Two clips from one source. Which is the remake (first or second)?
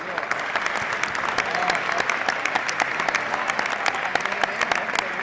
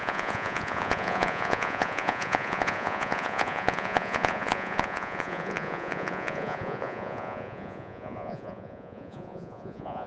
second